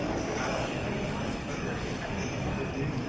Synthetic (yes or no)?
yes